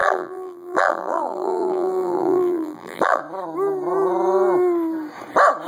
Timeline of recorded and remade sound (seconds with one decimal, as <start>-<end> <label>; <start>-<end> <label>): 0.0-3.2 remade; 3.2-5.7 recorded